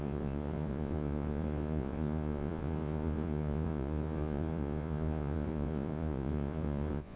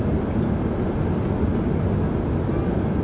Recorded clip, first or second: second